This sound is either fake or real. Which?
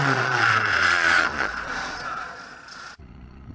fake